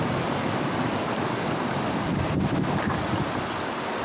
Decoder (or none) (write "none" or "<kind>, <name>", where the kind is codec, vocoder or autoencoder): none